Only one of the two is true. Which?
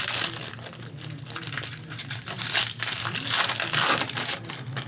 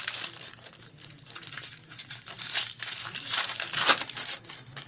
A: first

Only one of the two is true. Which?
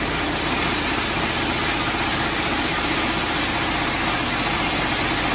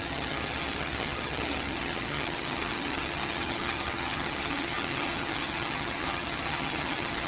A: first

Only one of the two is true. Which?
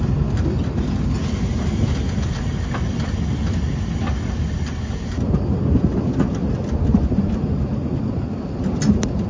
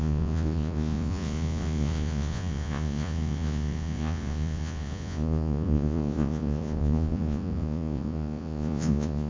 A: first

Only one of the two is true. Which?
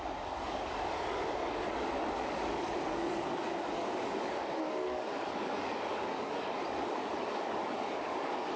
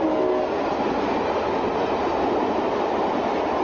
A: second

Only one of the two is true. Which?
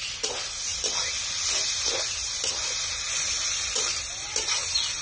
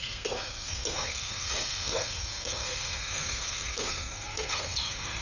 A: first